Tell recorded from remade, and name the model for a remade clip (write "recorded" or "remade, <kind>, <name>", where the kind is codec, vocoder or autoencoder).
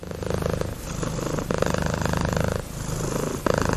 recorded